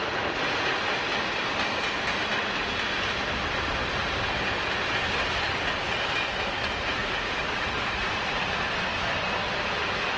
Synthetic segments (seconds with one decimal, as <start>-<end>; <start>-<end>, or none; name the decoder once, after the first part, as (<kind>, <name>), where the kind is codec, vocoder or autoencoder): 0.0-0.8 (vocoder, Vocos); 7.0-8.7